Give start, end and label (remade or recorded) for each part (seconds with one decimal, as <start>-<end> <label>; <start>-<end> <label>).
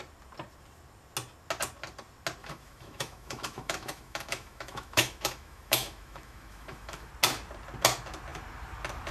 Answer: 0.0-2.4 recorded; 2.4-7.1 remade; 7.1-9.1 recorded